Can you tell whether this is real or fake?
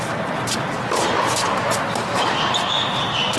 real